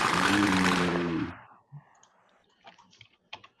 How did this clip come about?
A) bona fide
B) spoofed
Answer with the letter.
B